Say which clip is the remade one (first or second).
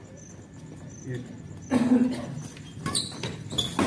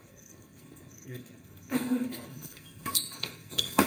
second